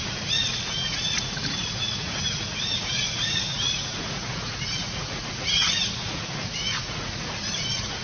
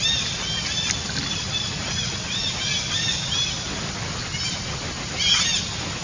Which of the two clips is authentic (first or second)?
second